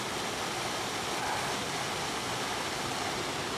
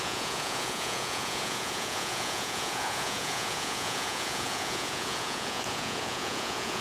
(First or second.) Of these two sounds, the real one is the first